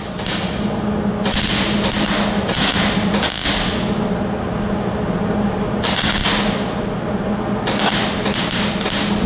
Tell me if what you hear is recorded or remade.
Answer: recorded